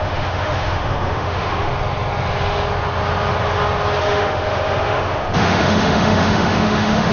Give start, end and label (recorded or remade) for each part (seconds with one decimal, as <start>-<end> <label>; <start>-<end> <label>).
0.0-1.7 remade; 1.7-4.0 recorded; 4.0-7.1 remade